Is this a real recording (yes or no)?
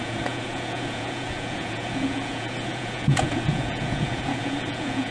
no